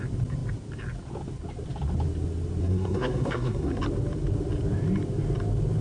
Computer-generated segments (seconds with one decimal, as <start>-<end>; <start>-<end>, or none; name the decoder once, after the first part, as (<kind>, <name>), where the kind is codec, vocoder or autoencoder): 2.6-3.8 (codec, SNAC)